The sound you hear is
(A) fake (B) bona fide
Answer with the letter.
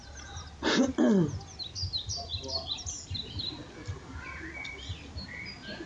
B